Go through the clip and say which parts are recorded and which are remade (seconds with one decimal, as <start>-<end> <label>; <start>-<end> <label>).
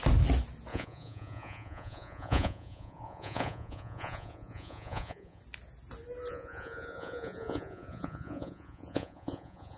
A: 0.0-0.7 recorded; 0.7-5.4 remade; 5.4-6.3 recorded; 6.3-9.8 remade